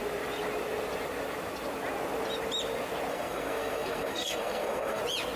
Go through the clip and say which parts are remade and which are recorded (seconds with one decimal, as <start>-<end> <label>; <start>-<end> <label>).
0.0-3.1 recorded; 3.1-5.0 remade; 5.0-5.4 recorded